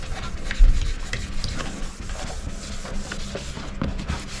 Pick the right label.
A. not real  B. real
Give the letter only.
B